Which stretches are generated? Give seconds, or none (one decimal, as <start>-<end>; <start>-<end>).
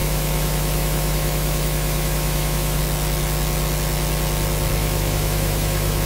0.0-2.8; 4.8-6.1